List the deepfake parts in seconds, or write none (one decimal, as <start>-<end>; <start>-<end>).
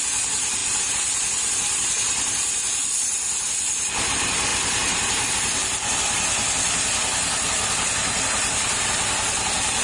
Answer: none